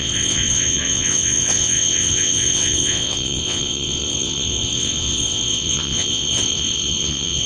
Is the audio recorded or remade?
remade